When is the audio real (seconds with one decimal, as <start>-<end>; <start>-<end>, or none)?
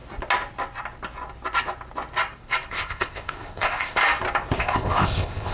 0.0-2.7; 4.0-4.6